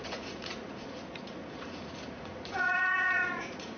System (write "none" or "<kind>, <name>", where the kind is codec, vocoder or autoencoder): vocoder, Vocos